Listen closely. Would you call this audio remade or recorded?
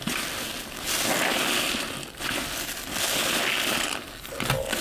recorded